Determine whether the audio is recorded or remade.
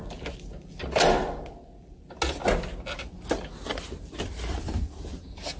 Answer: recorded